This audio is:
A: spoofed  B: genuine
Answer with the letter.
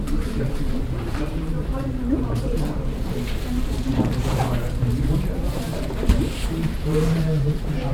A